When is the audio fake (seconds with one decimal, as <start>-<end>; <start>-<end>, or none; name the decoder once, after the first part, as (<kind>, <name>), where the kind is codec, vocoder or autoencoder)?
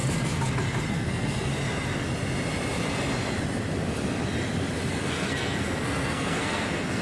0.9-1.5 (codec, SNAC); 4.9-7.0